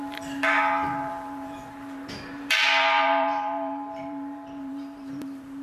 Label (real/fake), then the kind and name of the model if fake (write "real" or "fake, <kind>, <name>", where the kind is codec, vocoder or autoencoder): fake, vocoder, BigVGAN v2